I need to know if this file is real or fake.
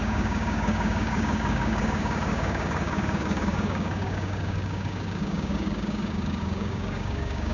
fake